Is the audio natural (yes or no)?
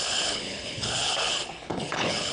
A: no